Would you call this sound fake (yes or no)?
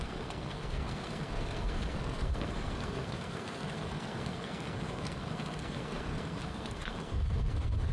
yes